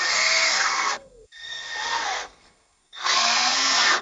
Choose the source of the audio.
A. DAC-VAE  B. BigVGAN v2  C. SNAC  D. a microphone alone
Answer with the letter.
C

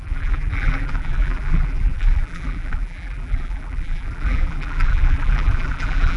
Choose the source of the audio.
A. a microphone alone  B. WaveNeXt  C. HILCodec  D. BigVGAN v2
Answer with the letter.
D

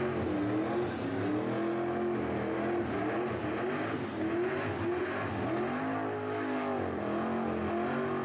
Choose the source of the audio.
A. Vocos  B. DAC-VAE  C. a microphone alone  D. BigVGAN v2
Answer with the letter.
C